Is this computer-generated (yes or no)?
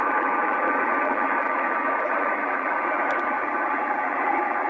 yes